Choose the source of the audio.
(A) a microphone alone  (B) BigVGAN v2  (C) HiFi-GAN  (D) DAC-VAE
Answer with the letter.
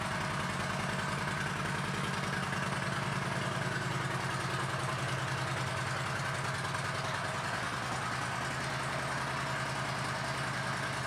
A